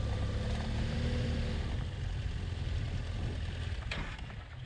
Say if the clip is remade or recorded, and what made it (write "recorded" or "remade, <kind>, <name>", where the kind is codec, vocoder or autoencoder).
recorded